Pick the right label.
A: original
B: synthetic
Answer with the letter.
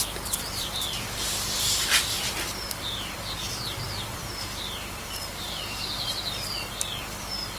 B